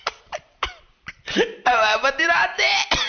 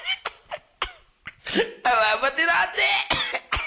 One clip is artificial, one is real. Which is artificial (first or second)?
first